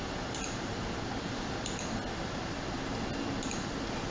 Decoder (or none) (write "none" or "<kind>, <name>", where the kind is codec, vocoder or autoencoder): none